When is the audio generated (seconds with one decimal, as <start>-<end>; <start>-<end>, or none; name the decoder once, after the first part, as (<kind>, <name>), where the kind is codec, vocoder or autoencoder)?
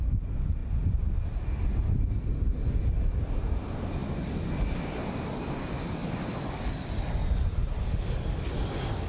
none